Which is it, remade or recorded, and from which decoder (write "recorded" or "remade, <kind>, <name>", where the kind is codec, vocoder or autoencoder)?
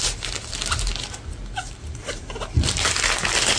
recorded